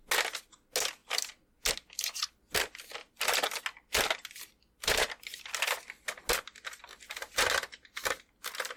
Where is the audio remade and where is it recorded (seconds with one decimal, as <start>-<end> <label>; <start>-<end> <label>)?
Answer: 0.0-8.8 recorded